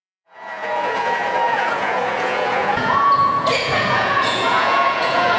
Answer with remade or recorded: remade